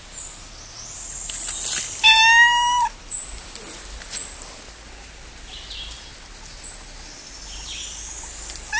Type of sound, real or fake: real